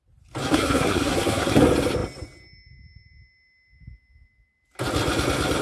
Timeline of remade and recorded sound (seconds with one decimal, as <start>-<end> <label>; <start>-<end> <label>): 0.0-0.4 recorded; 0.4-1.5 remade; 1.5-5.6 recorded